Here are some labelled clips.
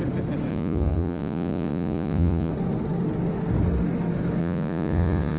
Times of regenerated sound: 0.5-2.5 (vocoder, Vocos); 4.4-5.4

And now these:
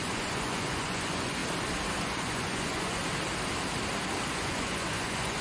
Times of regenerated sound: 0.0-1.4 (vocoder, Vocos); 2.0-3.0; 4.3-5.4

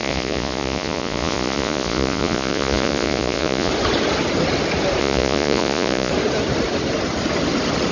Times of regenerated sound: 0.0-3.7 (vocoder, Vocos); 5.0-6.1